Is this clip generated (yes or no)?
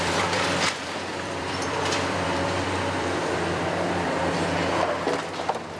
yes